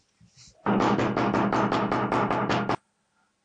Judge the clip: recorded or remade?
recorded